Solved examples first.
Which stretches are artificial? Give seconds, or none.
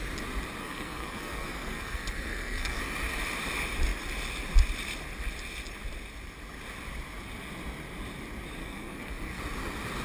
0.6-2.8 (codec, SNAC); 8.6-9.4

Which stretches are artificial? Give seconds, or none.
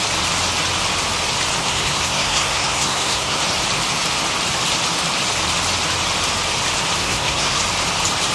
1.6-3.4 (codec, SNAC); 7.0-7.6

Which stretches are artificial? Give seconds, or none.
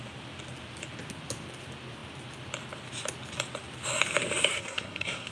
4.5-5.3 (codec, SNAC)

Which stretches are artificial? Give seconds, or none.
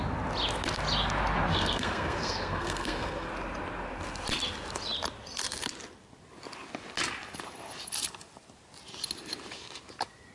1.5-3.3 (codec, SNAC)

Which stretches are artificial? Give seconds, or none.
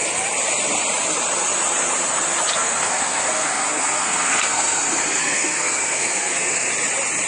2.5-6.7 (codec, SNAC)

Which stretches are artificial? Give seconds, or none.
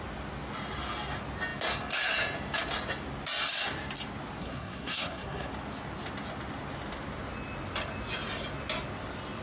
4.4-5.5 (codec, SNAC)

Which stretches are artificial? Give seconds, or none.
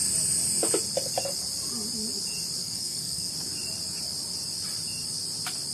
2.6-3.3 (codec, SNAC)